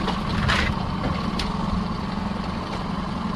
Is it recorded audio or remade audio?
recorded